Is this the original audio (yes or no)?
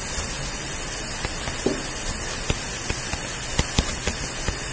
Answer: yes